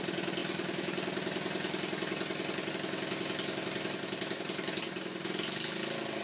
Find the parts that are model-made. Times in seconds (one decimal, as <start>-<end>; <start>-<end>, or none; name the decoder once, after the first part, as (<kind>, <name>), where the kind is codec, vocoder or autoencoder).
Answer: none